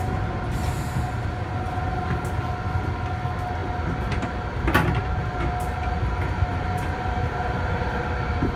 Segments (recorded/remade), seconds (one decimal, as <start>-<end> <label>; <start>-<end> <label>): 0.0-6.5 recorded; 6.5-8.0 remade; 8.0-8.6 recorded